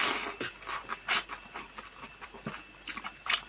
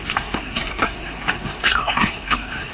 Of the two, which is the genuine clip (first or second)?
first